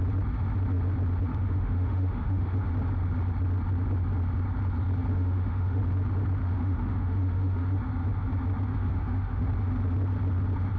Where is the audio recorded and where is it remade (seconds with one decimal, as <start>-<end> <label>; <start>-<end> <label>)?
0.0-1.3 recorded; 1.3-2.7 remade; 2.7-5.1 recorded; 5.1-5.8 remade; 5.8-6.4 recorded; 6.4-7.8 remade; 7.8-8.7 recorded; 8.7-9.5 remade; 9.5-10.8 recorded